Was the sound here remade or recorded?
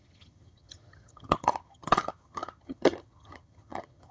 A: remade